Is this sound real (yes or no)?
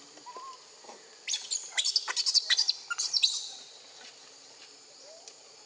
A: yes